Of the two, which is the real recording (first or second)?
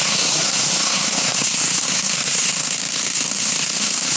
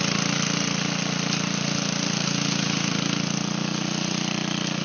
second